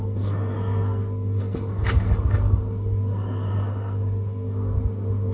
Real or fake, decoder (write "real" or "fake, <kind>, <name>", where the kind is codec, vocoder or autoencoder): fake, codec, SNAC